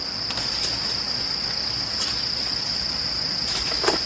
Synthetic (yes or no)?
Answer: no